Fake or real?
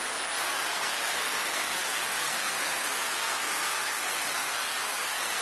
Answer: fake